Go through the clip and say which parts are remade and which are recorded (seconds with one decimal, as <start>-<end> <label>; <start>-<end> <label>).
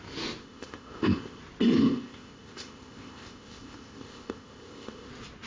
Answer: 0.0-0.4 recorded; 0.4-1.4 remade; 1.4-1.8 recorded; 1.8-5.1 remade; 5.1-5.5 recorded